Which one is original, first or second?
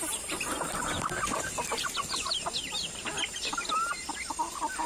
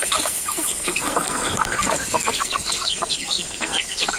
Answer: first